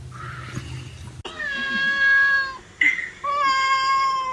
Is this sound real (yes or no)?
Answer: yes